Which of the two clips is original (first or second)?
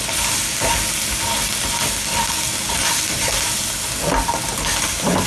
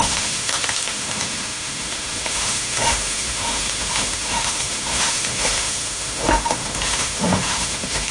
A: first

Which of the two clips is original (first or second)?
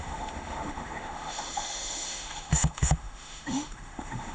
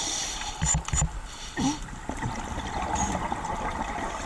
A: second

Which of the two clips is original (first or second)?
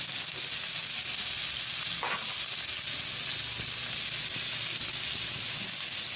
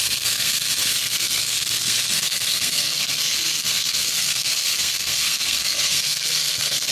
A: first